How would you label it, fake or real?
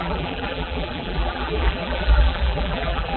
fake